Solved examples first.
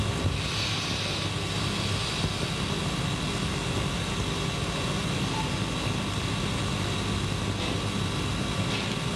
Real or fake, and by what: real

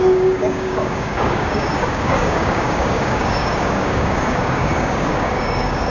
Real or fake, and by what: fake, codec, DAC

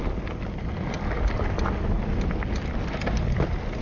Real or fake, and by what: real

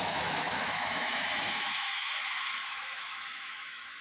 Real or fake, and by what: fake, autoencoder, DAC-VAE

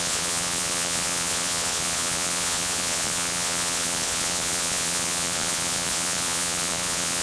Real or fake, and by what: fake, vocoder, Vocos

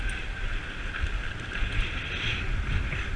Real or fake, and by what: real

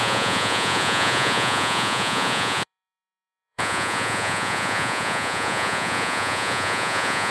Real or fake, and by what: fake, vocoder, Vocos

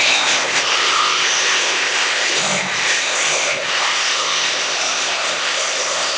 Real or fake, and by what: fake, codec, ZipCodec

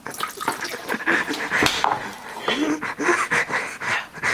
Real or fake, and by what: real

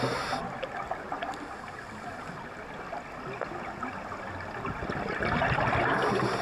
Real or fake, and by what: real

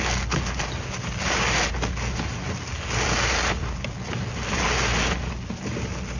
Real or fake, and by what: real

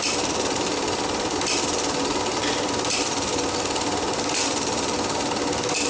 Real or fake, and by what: fake, vocoder, BigVGAN v2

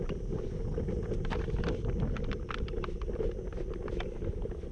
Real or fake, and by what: real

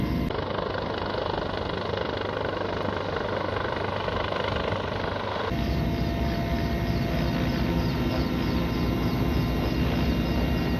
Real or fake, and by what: real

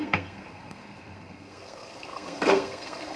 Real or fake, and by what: fake, codec, SNAC